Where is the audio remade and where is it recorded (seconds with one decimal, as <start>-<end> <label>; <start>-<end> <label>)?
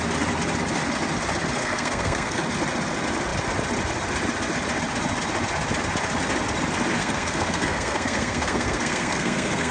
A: 0.0-1.6 recorded; 1.6-2.4 remade; 2.4-7.0 recorded; 7.0-9.7 remade